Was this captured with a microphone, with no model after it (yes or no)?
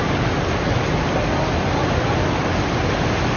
yes